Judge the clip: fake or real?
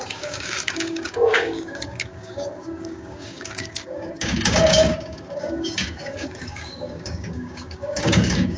fake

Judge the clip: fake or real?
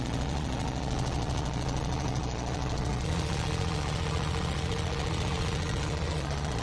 fake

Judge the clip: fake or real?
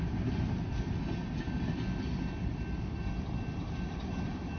real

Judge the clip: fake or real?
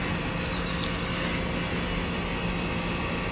real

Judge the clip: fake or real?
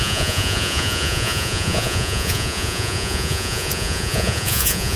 fake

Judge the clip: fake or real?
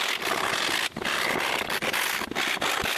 fake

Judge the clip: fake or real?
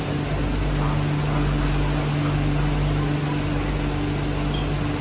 real